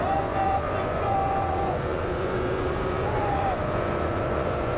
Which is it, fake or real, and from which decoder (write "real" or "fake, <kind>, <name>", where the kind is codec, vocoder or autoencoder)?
fake, vocoder, Vocos